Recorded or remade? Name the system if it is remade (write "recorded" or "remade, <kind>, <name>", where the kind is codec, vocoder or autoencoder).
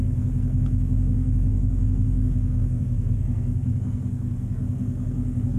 remade, codec, SNAC